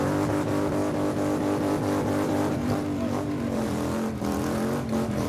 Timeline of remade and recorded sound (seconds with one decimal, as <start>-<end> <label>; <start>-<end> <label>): 0.0-5.3 remade